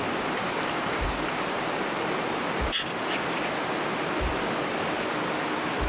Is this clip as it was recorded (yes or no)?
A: yes